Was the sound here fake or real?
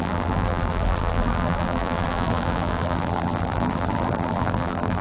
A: fake